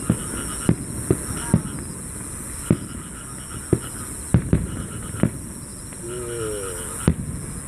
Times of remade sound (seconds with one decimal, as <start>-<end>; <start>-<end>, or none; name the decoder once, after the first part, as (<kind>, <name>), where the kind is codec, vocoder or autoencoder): 4.3-5.2 (vocoder, BigVGAN v2)